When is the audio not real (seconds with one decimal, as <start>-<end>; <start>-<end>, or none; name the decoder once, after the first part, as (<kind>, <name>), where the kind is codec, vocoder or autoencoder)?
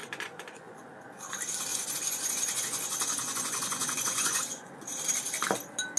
0.0-0.9 (vocoder, Vocos); 1.7-4.8